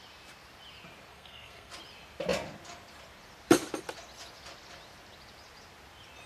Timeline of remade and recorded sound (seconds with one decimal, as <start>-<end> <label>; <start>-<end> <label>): 0.0-1.1 recorded; 1.1-1.7 remade; 1.7-6.3 recorded